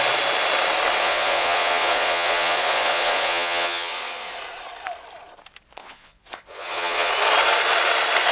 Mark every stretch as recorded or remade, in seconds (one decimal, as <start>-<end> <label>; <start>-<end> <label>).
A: 0.0-1.0 recorded; 1.0-4.4 remade; 4.4-5.8 recorded; 5.8-7.1 remade; 7.1-8.3 recorded